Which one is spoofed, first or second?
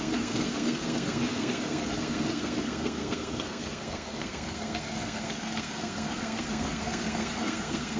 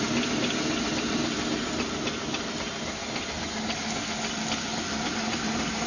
first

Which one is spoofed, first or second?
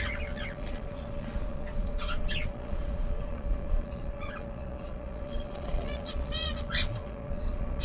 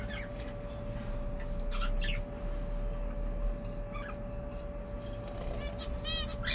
first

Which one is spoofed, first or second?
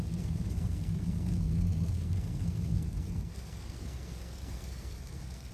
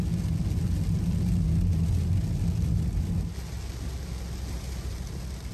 first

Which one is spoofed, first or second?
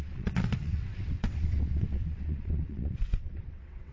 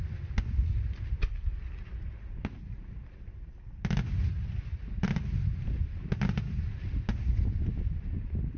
first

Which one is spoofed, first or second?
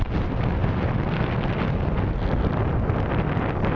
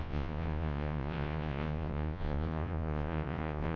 second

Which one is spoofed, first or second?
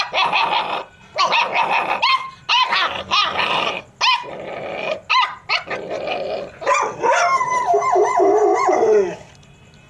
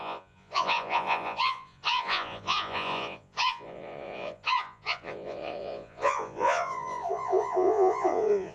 second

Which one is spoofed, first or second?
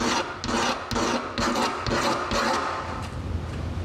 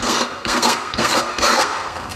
second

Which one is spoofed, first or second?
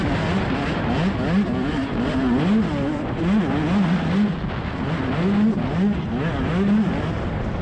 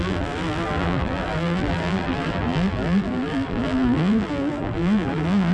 second